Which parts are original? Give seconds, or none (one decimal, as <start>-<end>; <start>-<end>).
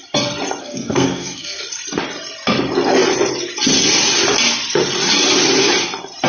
0.0-0.6; 1.6-6.3